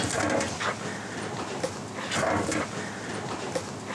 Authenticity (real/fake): real